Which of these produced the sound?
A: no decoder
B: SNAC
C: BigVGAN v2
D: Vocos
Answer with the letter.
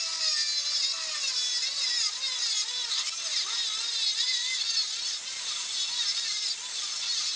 A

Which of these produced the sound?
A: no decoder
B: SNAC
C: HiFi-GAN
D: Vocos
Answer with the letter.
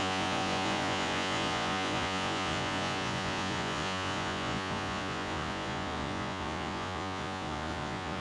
D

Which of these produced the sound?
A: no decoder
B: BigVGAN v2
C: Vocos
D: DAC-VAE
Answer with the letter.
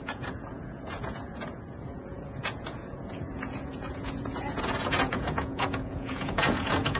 C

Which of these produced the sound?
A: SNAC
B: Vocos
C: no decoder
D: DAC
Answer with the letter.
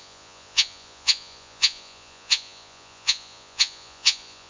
B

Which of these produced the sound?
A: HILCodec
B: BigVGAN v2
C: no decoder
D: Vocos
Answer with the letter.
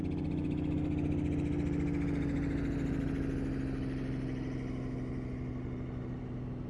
C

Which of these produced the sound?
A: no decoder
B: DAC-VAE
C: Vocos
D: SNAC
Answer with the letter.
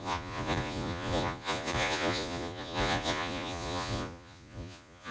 C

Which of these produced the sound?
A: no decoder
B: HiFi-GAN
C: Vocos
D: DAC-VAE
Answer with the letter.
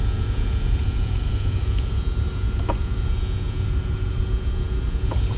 C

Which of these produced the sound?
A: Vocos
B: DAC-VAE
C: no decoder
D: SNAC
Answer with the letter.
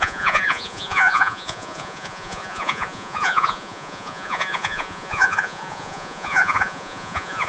A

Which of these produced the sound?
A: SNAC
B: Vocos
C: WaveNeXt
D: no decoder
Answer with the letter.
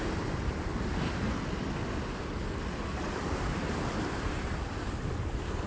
D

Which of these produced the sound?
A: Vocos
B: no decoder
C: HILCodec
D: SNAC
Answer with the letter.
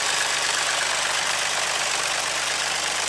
B